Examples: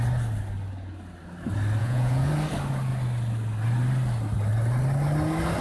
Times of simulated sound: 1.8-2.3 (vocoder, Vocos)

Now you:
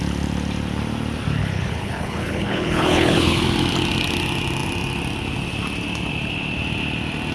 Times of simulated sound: 1.4-3.4 (codec, HILCodec)

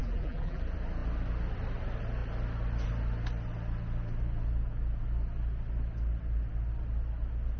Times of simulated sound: 0.0-0.6 (vocoder, BigVGAN v2)

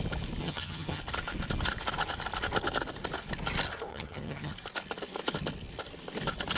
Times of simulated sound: 0.4-1.0 (vocoder, HiFi-GAN); 3.9-4.5

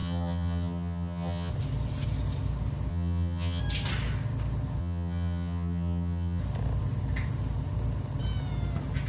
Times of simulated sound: 0.0-1.5 (vocoder, HiFi-GAN); 2.9-3.6; 4.8-6.4

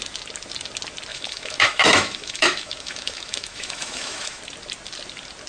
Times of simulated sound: 1.1-4.4 (autoencoder, DAC-VAE)

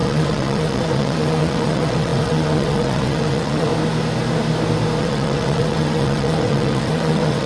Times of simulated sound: 0.0-3.7 (vocoder, WaveNeXt); 5.0-7.5